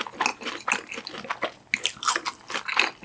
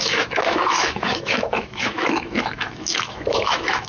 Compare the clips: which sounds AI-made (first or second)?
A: second